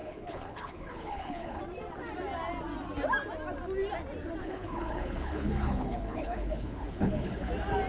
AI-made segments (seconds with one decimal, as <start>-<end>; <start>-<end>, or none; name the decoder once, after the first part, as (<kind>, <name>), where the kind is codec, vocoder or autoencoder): 0.0-1.6 (codec, HILCodec); 4.4-7.5